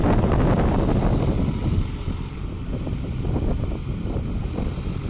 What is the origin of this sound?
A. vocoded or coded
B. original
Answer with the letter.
B